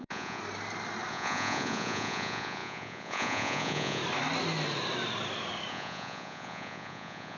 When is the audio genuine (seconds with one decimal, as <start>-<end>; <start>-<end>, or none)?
0.4-1.1; 4.0-5.7